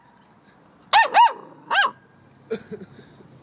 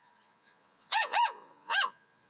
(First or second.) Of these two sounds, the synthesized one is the second